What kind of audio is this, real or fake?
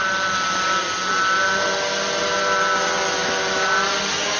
real